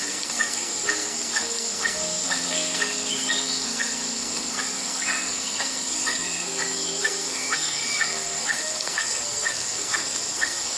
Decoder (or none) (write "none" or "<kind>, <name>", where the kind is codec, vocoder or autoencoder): codec, SNAC